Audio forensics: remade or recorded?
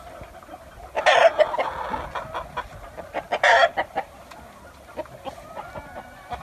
recorded